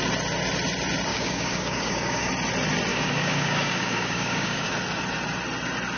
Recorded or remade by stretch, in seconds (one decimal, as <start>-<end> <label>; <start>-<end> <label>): 0.0-1.1 recorded; 1.1-2.3 remade; 2.3-2.9 recorded; 2.9-4.7 remade; 4.7-6.0 recorded